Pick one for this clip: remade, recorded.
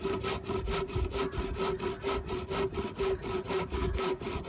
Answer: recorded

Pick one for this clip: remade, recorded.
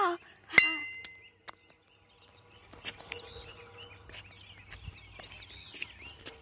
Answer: recorded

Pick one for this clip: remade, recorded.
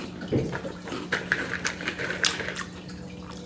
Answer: recorded